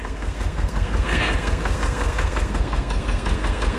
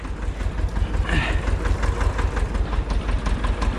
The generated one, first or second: first